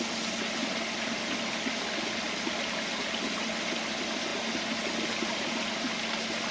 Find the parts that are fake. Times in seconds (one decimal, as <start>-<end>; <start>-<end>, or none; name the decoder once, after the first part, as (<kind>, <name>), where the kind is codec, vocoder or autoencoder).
none